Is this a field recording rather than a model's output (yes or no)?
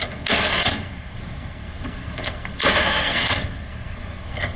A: no